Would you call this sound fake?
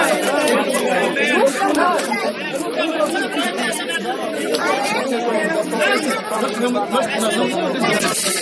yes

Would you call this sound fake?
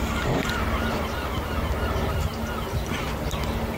no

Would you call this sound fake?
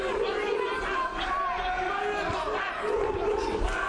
no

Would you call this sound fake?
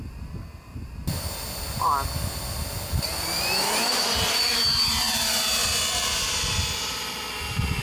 no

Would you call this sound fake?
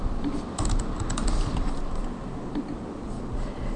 yes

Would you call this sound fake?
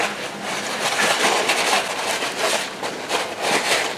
no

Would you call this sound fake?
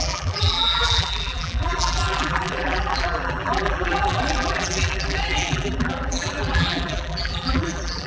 yes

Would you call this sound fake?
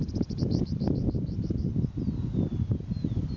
yes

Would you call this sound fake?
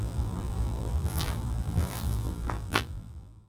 yes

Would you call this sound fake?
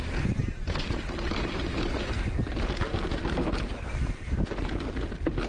no